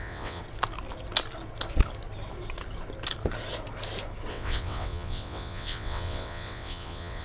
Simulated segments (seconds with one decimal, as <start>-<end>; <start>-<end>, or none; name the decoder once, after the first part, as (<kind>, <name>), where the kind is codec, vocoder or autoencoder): 0.0-0.4 (vocoder, WaveNeXt); 4.3-7.2